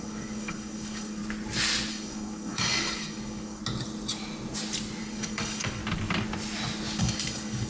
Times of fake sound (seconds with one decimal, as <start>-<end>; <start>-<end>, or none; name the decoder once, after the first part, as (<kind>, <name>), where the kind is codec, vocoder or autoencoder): 0.0-1.2 (codec, DAC); 1.9-3.6; 5.0-5.8; 7.0-7.7